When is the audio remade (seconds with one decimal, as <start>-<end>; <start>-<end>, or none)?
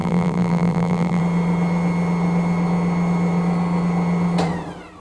0.0-1.2